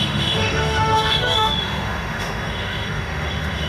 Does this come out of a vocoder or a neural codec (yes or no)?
yes